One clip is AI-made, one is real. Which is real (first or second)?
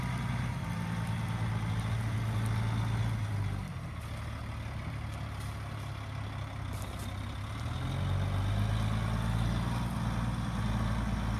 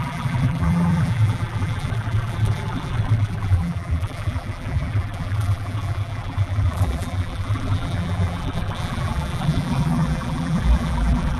first